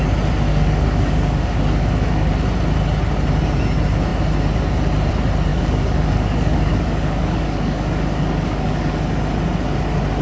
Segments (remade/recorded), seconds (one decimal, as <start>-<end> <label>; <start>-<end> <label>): 0.0-0.5 recorded; 0.5-2.3 remade; 2.3-5.5 recorded; 5.5-9.2 remade; 9.2-10.2 recorded